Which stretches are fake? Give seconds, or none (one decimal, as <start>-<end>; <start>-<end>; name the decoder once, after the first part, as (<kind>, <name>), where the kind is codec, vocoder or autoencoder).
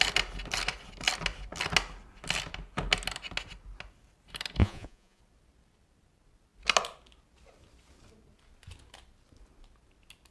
4.6-5.2 (vocoder, Vocos)